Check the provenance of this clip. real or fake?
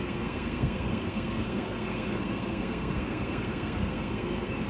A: fake